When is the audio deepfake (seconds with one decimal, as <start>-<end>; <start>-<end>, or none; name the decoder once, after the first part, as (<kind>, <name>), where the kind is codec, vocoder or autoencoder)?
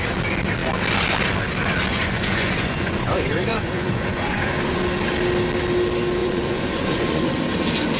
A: 1.9-4.8 (vocoder, Vocos); 6.2-7.3